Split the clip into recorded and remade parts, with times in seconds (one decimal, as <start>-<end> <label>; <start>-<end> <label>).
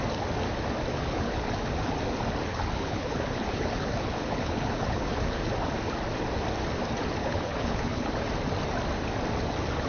0.0-0.9 recorded; 0.9-1.5 remade; 1.5-2.5 recorded; 2.5-5.5 remade; 5.5-7.2 recorded; 7.2-8.1 remade; 8.1-9.9 recorded